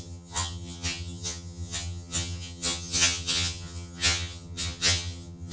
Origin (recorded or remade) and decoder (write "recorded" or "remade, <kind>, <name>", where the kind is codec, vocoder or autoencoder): remade, vocoder, HiFi-GAN